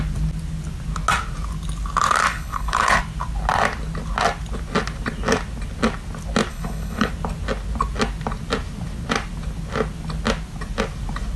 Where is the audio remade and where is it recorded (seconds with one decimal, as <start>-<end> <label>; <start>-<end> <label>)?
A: 0.0-2.3 recorded; 2.3-3.0 remade; 3.0-6.5 recorded; 6.5-7.1 remade; 7.1-11.4 recorded